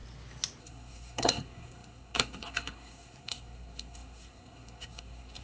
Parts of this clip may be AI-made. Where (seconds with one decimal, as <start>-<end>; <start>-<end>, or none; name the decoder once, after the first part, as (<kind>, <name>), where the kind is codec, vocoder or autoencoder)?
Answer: 0.6-5.4 (codec, SNAC)